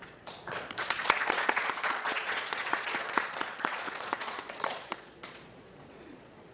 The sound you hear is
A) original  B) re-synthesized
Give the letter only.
B